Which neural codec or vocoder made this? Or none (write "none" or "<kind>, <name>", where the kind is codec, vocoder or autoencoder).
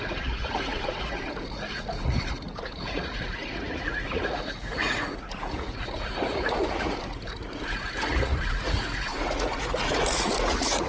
vocoder, Vocos